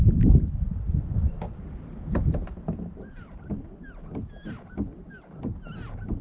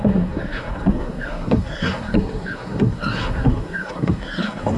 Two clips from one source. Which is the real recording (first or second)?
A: first